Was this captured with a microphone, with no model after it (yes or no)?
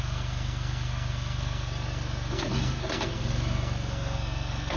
no